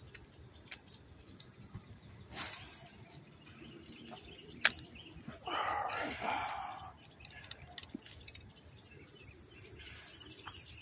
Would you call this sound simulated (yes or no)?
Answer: no